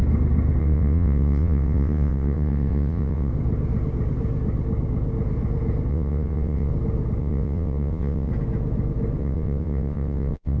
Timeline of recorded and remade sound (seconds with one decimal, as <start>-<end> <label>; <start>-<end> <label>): 0.0-0.6 recorded; 0.6-3.3 remade; 3.3-5.9 recorded; 5.9-6.7 remade; 6.7-7.2 recorded; 7.2-8.3 remade; 8.3-9.2 recorded; 9.2-10.6 remade